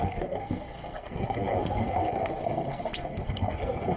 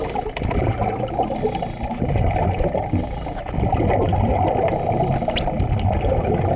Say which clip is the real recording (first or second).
second